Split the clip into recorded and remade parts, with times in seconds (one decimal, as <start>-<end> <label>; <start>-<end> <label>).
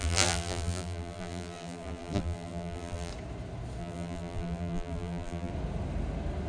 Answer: 0.0-3.1 remade; 3.1-3.8 recorded; 3.8-5.5 remade; 5.5-6.5 recorded